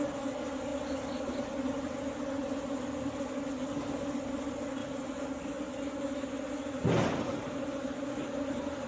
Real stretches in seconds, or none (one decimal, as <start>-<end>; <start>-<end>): 0.0-4.8; 5.4-7.3; 8.2-8.9